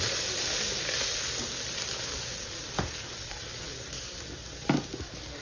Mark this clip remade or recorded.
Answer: recorded